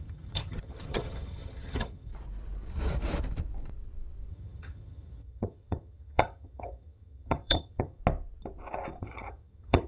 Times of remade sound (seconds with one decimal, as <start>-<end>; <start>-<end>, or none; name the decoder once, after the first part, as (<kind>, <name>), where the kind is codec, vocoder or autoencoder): 0.0-2.1 (vocoder, HiFi-GAN); 4.3-8.0; 9.0-9.9